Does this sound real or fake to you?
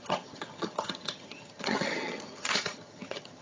fake